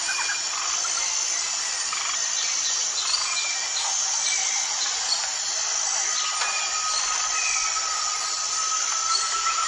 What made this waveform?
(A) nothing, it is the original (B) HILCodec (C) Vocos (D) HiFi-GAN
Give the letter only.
A